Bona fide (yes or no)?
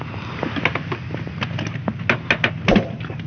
yes